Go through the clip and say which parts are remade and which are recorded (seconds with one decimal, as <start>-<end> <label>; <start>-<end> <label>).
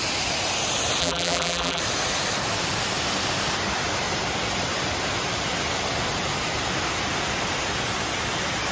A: 0.0-1.0 recorded; 1.0-1.8 remade; 1.8-8.7 recorded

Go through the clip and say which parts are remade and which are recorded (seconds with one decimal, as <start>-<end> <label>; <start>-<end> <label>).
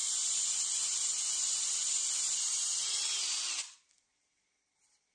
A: 0.0-5.1 recorded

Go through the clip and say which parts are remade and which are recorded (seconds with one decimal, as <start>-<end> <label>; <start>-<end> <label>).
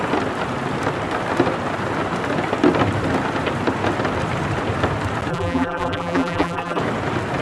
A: 0.0-5.3 recorded; 5.3-6.8 remade; 6.8-7.4 recorded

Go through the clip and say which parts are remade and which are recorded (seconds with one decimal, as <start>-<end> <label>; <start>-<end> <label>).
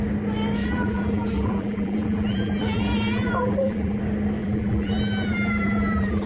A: 0.0-0.6 recorded; 0.6-4.0 remade; 4.0-4.4 recorded; 4.4-6.3 remade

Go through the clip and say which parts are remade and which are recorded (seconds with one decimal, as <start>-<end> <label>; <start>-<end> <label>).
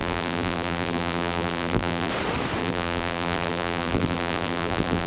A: 0.0-2.1 remade; 2.1-2.6 recorded; 2.6-5.1 remade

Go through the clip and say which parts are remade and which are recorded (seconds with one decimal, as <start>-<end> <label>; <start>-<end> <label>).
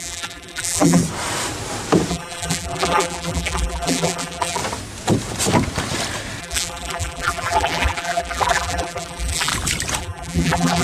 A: 0.0-1.0 remade; 1.0-2.1 recorded; 2.1-4.6 remade; 4.6-6.4 recorded; 6.4-9.5 remade; 9.5-10.0 recorded; 10.0-10.8 remade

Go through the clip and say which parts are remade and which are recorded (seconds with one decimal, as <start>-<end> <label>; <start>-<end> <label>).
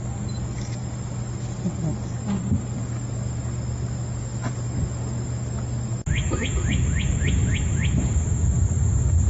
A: 0.0-4.3 recorded; 4.3-4.8 remade; 4.8-9.3 recorded